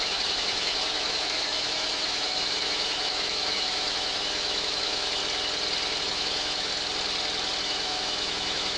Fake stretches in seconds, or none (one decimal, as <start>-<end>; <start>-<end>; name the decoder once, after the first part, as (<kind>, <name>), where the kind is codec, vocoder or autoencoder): 0.0-5.2 (autoencoder, DAC-VAE); 6.0-6.7; 7.6-8.8